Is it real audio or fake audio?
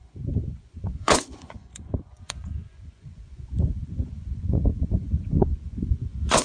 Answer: fake